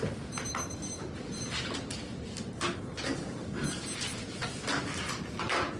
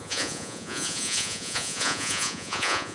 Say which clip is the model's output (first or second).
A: second